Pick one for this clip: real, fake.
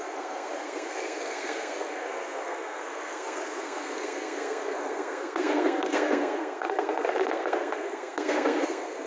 fake